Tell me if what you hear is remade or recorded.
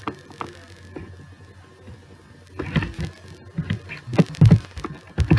recorded